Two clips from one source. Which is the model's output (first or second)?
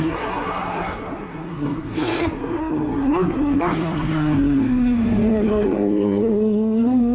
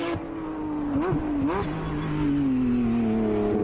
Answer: first